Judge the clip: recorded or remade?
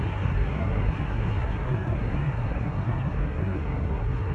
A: remade